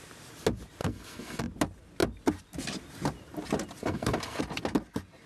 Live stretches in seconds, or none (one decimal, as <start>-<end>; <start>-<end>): 0.0-0.8; 1.4-3.8; 4.4-5.3